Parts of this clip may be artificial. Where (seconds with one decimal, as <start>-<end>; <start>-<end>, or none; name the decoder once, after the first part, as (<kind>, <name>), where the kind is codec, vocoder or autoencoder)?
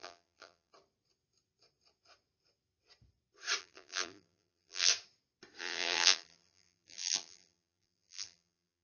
0.0-0.7 (vocoder, BigVGAN v2); 3.6-4.9; 5.6-8.8